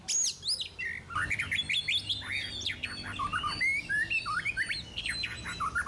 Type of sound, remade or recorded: recorded